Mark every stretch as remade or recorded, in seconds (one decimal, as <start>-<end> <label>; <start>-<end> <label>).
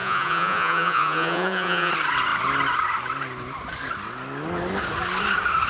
0.0-1.9 remade; 1.9-5.7 recorded